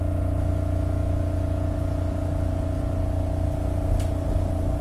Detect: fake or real real